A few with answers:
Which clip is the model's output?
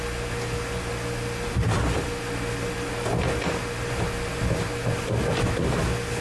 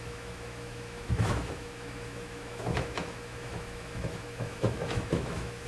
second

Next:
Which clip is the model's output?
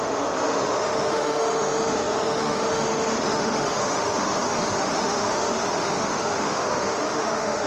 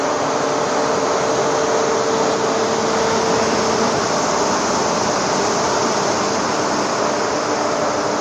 first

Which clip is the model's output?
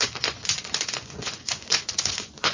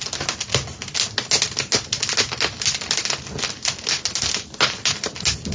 first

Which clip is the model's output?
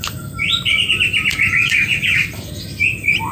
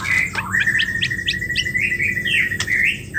first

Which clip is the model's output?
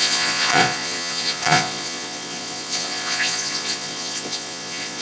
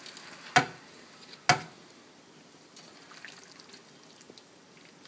first